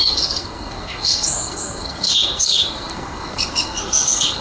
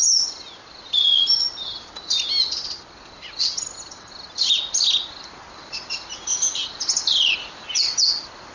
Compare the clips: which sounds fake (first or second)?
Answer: first